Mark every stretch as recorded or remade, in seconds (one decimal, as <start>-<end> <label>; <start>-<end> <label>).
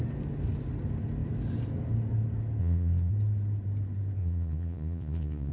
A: 0.0-2.6 recorded; 2.6-3.1 remade; 3.1-4.2 recorded; 4.2-5.5 remade